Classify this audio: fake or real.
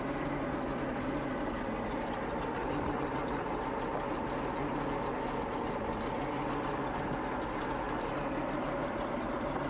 real